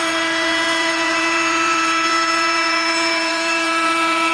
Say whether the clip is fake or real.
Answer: fake